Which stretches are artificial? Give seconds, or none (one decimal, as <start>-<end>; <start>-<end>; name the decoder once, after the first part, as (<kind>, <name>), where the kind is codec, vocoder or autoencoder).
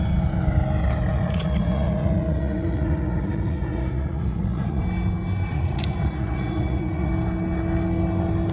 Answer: 1.1-4.8 (vocoder, Vocos); 5.5-7.1